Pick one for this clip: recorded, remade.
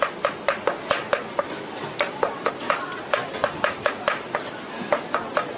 recorded